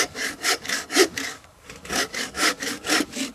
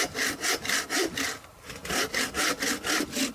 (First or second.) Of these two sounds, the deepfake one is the first